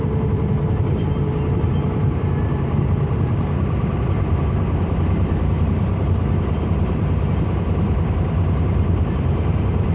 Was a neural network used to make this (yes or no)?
yes